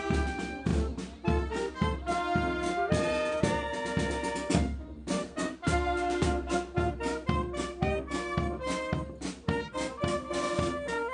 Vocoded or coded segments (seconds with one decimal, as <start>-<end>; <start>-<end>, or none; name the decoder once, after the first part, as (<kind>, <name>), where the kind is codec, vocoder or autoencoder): 5.2-6.9 (codec, SNAC)